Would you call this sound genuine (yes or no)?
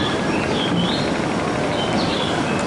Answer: yes